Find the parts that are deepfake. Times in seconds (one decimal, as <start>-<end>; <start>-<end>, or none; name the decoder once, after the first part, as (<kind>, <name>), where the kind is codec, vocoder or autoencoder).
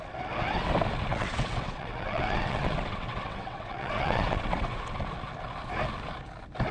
1.1-4.9 (vocoder, WaveNeXt)